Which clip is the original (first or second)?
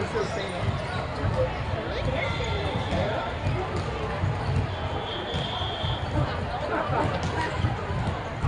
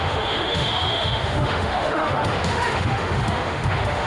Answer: first